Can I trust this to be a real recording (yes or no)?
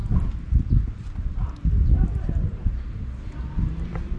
yes